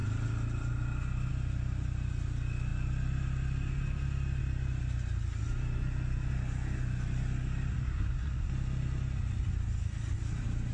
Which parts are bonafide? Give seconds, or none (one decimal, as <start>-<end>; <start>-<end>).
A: 0.0-7.7; 8.5-10.7